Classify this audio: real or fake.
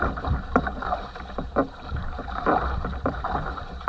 fake